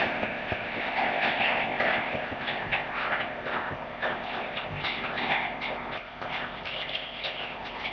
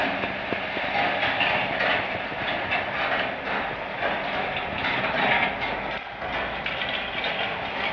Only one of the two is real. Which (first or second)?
second